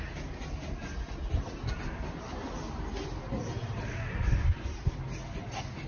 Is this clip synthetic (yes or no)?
no